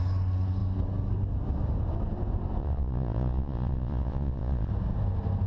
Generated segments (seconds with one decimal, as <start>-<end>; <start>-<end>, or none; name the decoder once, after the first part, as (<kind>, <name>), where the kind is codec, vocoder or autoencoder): 2.6-4.7 (vocoder, Vocos)